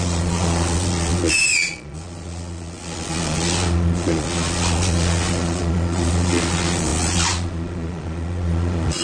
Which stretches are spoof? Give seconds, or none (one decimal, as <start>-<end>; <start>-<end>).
0.0-9.0